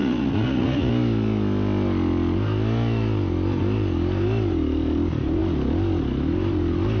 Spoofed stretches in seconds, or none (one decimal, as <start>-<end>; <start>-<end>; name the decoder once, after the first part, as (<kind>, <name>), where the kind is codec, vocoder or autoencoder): 0.0-0.9 (vocoder, Vocos)